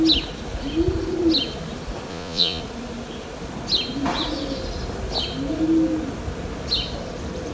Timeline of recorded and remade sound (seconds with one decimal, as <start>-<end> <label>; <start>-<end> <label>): 0.0-2.1 recorded; 2.1-2.6 remade; 2.6-7.5 recorded

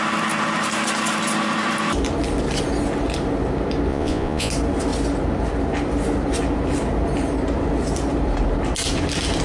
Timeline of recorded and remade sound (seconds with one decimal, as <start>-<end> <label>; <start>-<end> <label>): 0.0-3.9 recorded; 3.9-4.5 remade; 4.5-9.4 recorded

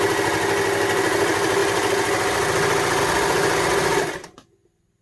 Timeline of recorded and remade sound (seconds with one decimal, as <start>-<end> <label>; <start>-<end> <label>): 0.0-5.0 recorded

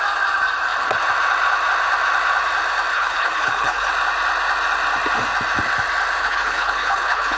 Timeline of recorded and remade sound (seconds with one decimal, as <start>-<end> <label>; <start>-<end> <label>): 0.0-2.9 recorded; 2.9-3.9 remade; 3.9-6.2 recorded; 6.2-7.4 remade